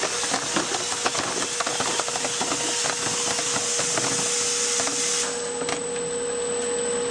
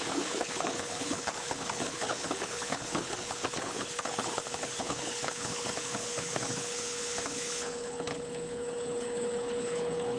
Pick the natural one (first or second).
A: first